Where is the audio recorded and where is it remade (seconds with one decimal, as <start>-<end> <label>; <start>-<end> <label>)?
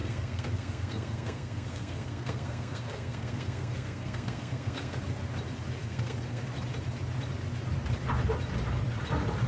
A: 0.0-5.0 remade; 5.0-5.8 recorded; 5.8-6.4 remade; 6.4-9.5 recorded